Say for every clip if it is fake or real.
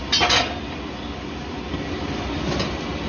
real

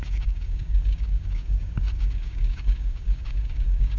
fake